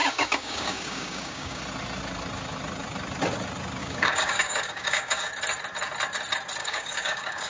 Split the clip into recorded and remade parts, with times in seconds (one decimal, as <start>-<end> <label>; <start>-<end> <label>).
0.0-1.6 remade; 1.6-3.8 recorded; 3.8-5.3 remade; 5.3-6.6 recorded; 6.6-7.5 remade